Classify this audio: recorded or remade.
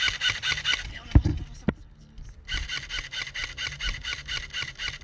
recorded